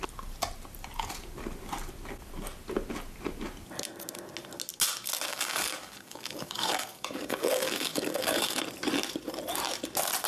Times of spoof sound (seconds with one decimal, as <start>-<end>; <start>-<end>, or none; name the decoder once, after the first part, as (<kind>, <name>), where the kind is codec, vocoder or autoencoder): 5.3-8.6 (codec, DAC)